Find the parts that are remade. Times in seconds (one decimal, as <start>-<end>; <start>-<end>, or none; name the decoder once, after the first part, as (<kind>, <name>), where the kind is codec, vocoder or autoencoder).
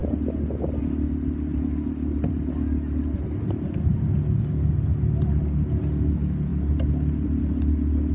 none